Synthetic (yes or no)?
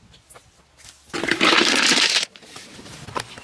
no